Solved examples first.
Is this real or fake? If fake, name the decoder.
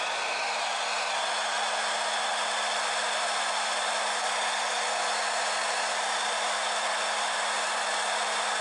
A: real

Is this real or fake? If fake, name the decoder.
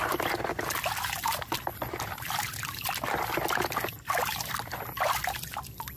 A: real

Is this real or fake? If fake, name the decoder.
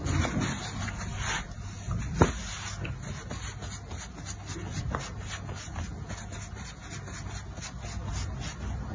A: real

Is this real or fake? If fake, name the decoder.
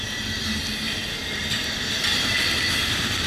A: real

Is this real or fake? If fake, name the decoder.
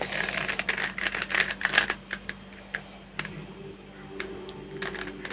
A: real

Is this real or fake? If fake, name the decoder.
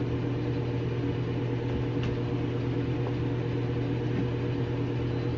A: real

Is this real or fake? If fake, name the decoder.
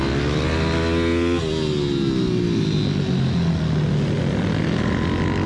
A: real